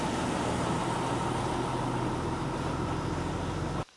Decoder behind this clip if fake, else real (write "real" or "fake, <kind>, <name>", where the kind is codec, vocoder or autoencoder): real